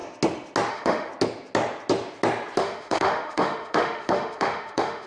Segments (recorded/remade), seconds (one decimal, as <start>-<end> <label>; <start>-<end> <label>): 0.0-0.7 recorded; 0.7-1.1 remade; 1.1-2.6 recorded; 2.6-5.1 remade